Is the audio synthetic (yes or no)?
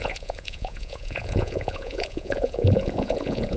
yes